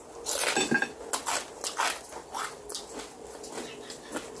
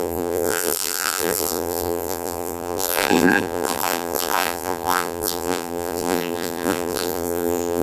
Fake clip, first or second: second